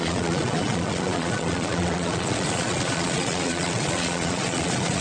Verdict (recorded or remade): remade